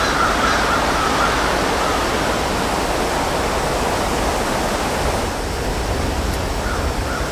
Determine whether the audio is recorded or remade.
recorded